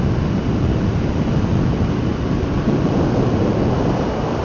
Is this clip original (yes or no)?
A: yes